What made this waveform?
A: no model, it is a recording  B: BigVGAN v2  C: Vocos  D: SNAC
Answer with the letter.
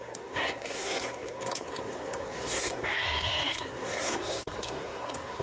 D